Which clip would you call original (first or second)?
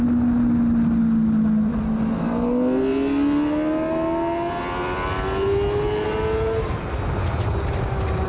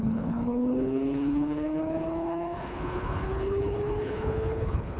first